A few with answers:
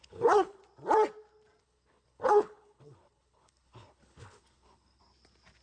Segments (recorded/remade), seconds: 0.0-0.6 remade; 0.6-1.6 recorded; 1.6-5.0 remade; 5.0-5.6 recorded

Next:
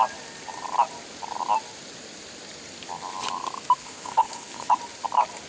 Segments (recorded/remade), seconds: 0.0-3.8 recorded; 3.8-4.8 remade; 4.8-5.5 recorded

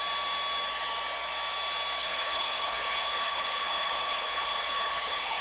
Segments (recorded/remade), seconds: 0.0-2.0 recorded; 2.0-5.4 remade

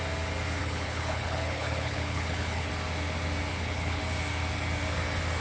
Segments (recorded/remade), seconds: 0.0-0.6 recorded; 0.6-2.7 remade; 2.7-3.5 recorded; 3.5-4.0 remade; 4.0-5.4 recorded

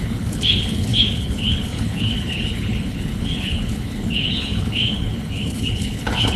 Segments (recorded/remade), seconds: 0.0-6.4 remade